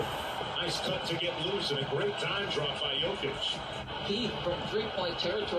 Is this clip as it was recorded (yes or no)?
yes